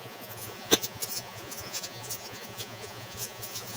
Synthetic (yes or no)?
yes